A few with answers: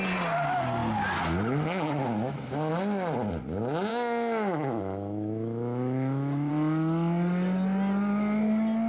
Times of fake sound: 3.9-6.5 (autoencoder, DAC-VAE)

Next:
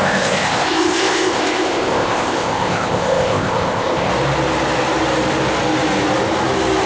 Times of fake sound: 0.0-4.1 (codec, ZipCodec)

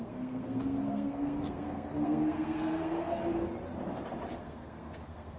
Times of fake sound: 0.0-3.2 (codec, SNAC); 4.4-5.4

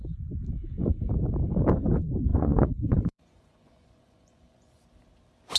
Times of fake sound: 2.3-4.8 (vocoder, Vocos)

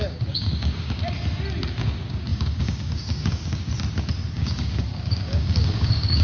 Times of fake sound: 0.0-1.0 (codec, DAC); 1.7-3.7; 4.3-6.2